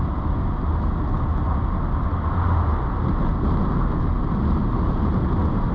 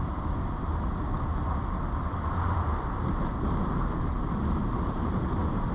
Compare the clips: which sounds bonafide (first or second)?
first